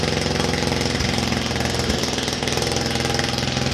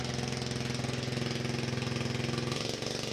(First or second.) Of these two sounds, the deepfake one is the first